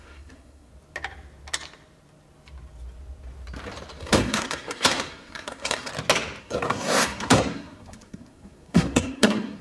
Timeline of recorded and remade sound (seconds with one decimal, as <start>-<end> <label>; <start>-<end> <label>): 0.0-0.7 remade; 0.7-4.0 recorded; 4.0-5.9 remade; 5.9-6.4 recorded; 6.4-9.6 remade